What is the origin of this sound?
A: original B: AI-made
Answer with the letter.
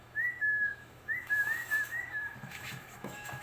B